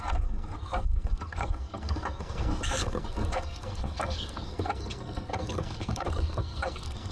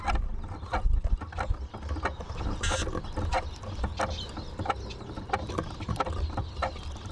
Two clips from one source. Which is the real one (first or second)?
second